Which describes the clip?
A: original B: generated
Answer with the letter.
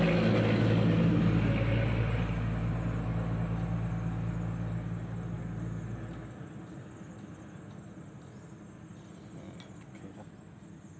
A